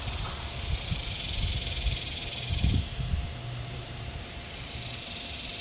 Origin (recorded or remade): remade